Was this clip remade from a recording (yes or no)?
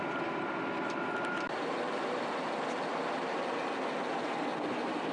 no